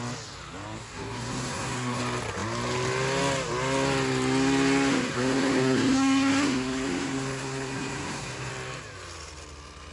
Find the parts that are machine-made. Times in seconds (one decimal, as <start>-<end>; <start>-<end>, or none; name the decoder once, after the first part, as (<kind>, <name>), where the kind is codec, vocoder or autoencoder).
0.8-2.0 (codec, SNAC); 4.9-8.5